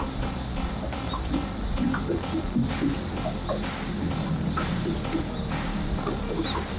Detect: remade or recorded remade